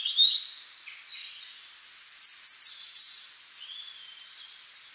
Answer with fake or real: real